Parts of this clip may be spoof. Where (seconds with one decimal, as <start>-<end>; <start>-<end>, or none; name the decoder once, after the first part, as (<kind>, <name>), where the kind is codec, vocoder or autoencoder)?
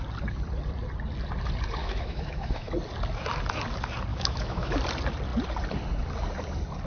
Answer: 1.8-2.7 (autoencoder, DAC-VAE); 4.1-4.8